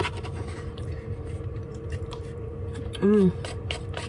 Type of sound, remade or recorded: remade